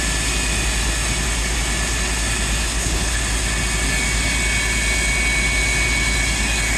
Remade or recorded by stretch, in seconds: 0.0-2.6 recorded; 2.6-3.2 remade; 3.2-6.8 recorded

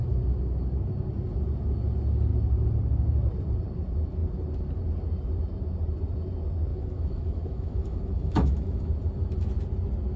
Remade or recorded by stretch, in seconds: 0.0-6.7 recorded; 6.7-8.9 remade; 8.9-10.2 recorded

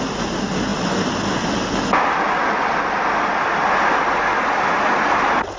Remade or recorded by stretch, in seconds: 0.0-5.6 recorded